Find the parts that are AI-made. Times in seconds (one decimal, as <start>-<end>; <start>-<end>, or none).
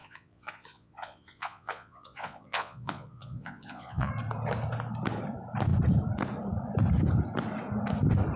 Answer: 0.0-4.1